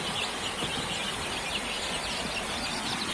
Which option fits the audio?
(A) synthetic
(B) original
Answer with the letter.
B